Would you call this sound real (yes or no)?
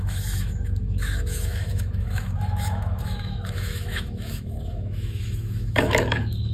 no